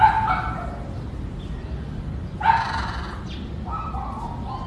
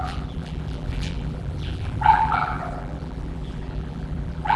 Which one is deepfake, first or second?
second